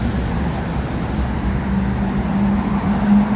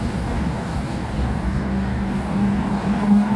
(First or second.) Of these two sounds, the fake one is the second